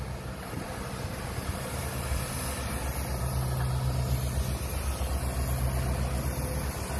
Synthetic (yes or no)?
no